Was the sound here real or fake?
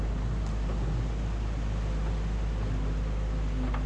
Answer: real